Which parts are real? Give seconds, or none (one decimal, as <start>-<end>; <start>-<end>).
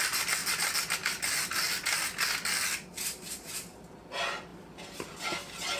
0.0-5.8